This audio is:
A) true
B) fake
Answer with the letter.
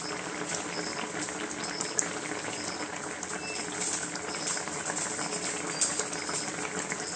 A